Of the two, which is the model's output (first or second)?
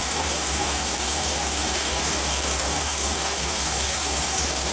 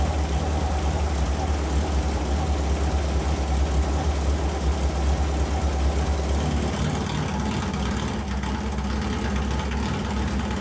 first